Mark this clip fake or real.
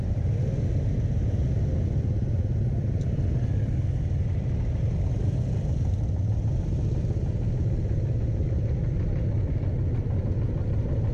real